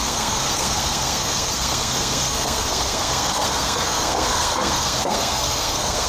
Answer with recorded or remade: remade